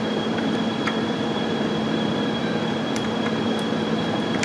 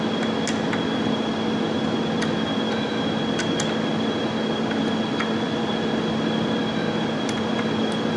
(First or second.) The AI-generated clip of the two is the first